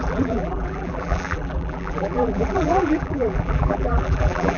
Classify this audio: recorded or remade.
remade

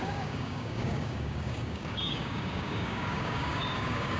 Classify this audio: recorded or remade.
remade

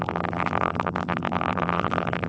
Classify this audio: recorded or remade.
remade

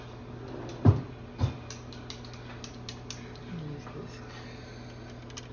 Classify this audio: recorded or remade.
recorded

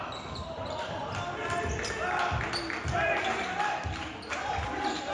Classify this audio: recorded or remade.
recorded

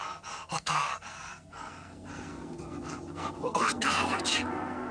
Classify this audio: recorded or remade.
remade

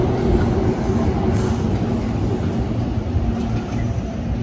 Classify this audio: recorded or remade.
recorded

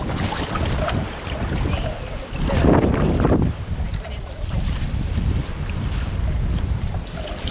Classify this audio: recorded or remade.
remade